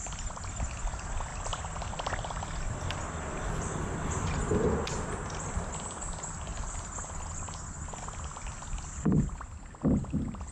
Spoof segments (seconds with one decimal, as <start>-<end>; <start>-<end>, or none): none